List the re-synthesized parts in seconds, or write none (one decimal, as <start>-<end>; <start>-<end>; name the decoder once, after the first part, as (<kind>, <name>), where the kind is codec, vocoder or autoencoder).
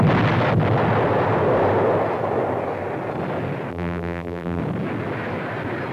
3.7-4.6 (vocoder, BigVGAN v2)